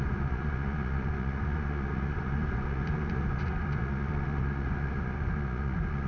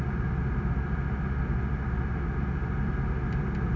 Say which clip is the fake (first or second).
first